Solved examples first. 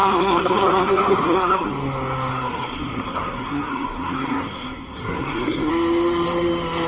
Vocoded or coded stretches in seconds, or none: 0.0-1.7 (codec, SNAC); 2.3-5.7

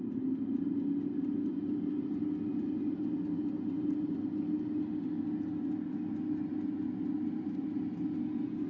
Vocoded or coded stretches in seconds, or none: none

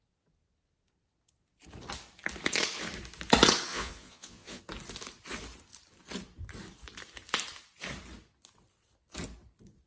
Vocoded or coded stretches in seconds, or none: 3.7-4.6 (vocoder, Vocos)

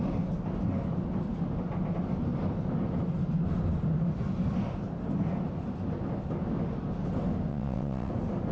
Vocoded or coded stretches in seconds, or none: 7.5-8.1 (vocoder, WaveNeXt)

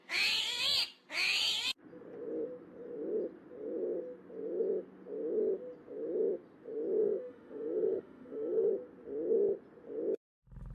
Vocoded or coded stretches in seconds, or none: 7.0-8.7 (autoencoder, DAC-VAE)